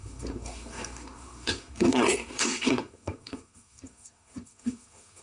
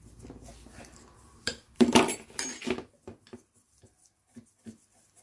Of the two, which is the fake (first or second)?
first